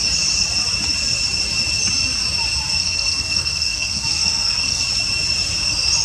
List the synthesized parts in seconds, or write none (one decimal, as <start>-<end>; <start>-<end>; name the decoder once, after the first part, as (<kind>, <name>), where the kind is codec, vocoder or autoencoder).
2.8-4.8 (codec, SNAC)